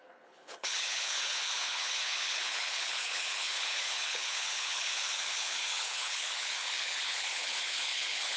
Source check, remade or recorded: remade